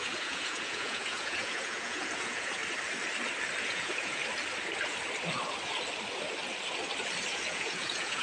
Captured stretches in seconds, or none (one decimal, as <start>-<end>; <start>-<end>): 2.6-3.6; 4.2-7.3